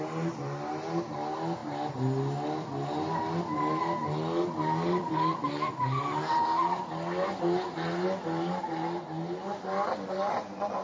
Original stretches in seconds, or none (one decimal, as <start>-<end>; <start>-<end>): 0.0-10.8